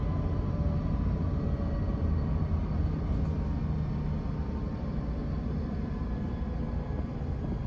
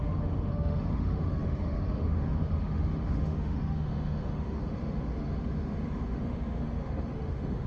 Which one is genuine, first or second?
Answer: first